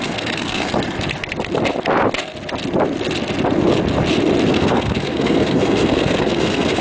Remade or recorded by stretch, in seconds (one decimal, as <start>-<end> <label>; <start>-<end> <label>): 0.0-0.7 remade; 0.7-4.5 recorded; 4.5-6.8 remade